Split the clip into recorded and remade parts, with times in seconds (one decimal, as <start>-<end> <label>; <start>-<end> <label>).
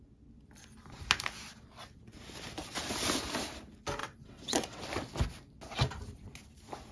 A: 0.0-4.0 recorded; 4.0-4.8 remade; 4.8-6.9 recorded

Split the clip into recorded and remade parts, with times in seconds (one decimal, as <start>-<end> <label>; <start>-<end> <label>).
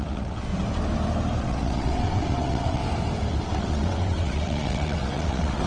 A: 0.0-0.5 remade; 0.5-1.4 recorded; 1.4-2.8 remade; 2.8-3.3 recorded; 3.3-5.7 remade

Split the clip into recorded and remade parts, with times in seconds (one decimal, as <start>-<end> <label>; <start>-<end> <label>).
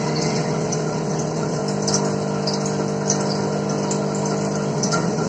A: 0.0-1.6 remade; 1.6-4.7 recorded; 4.7-5.3 remade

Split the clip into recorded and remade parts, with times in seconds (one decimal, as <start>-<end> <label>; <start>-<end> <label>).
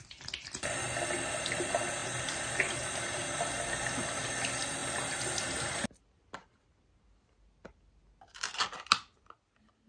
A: 0.0-9.9 recorded